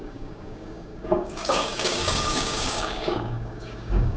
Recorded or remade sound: remade